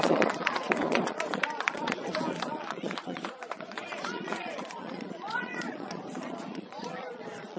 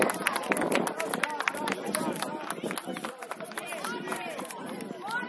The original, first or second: second